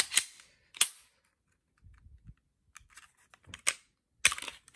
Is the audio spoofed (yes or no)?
no